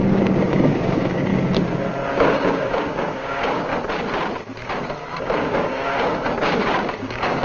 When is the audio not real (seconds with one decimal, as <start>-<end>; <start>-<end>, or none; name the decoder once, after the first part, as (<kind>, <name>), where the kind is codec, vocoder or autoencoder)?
0.0-1.3 (codec, DAC); 2.1-3.7; 5.2-7.4